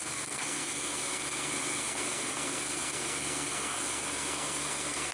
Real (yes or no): no